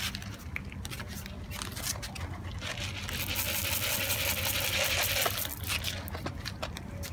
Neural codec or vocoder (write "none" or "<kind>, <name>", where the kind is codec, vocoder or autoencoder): none